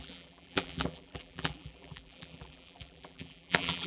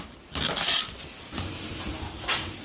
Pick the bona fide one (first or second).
second